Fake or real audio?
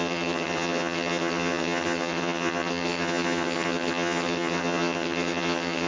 fake